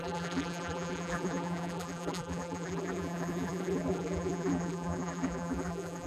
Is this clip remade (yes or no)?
yes